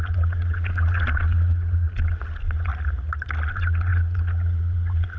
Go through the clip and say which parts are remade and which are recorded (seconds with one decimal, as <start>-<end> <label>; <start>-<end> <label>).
0.0-2.7 remade; 2.7-3.5 recorded; 3.5-5.2 remade